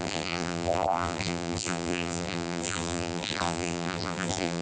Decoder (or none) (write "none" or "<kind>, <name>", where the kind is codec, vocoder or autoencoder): vocoder, BigVGAN v2